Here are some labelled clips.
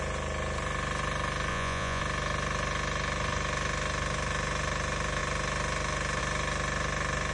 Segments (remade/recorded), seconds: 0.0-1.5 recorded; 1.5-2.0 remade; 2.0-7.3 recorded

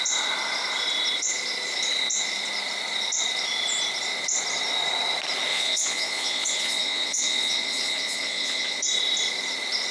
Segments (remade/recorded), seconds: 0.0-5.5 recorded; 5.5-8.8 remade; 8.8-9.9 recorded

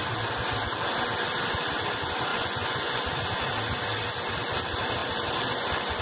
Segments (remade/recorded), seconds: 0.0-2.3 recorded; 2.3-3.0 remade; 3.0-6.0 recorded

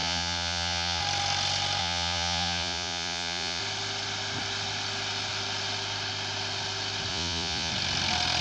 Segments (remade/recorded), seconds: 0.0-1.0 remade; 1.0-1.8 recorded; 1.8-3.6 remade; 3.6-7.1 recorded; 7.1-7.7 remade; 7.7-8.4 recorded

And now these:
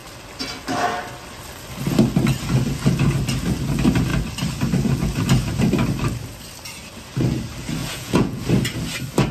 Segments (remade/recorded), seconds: 0.0-7.8 recorded; 7.8-8.4 remade; 8.4-9.3 recorded